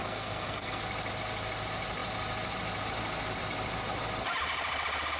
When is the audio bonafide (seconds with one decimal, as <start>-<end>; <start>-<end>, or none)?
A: 0.8-5.2